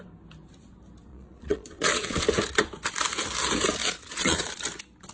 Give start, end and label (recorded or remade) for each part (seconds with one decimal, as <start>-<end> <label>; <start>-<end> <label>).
0.0-1.1 recorded; 1.1-2.2 remade; 2.2-3.8 recorded; 3.8-4.5 remade; 4.5-5.1 recorded